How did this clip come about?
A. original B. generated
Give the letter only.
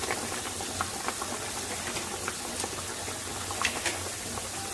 A